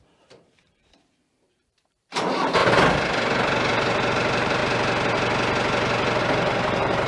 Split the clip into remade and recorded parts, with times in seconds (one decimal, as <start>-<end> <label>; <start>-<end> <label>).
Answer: 0.0-2.6 remade; 2.6-4.1 recorded; 4.1-4.6 remade; 4.6-6.2 recorded; 6.2-7.1 remade

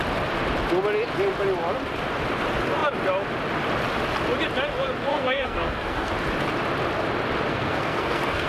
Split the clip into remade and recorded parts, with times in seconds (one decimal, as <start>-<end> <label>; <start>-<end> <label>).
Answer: 0.0-5.1 recorded; 5.1-6.1 remade; 6.1-7.5 recorded; 7.5-8.5 remade

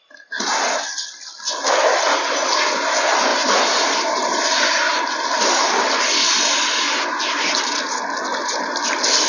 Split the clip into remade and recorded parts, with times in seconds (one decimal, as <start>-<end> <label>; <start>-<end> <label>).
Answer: 0.0-3.3 recorded; 3.3-6.0 remade; 6.0-8.3 recorded; 8.3-9.3 remade

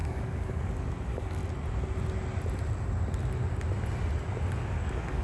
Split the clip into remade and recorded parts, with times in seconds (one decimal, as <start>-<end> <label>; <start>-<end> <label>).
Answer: 0.0-1.4 remade; 1.4-4.5 recorded; 4.5-5.2 remade

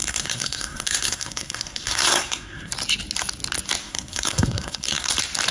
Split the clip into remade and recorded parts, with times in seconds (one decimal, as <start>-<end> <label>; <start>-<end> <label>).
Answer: 0.0-2.7 remade; 2.7-3.8 recorded; 3.8-5.1 remade; 5.1-5.5 recorded

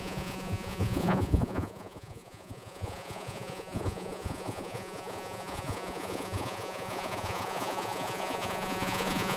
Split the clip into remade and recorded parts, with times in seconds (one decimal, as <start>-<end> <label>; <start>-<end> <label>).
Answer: 0.0-9.4 remade